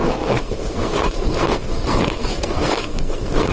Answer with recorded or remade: remade